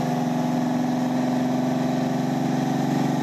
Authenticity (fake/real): real